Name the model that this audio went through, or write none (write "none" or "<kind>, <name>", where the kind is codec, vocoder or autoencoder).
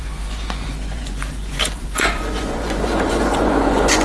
vocoder, Vocos